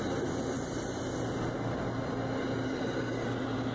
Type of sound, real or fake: real